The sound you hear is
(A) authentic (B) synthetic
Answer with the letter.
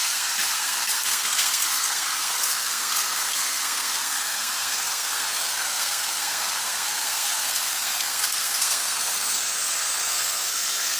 B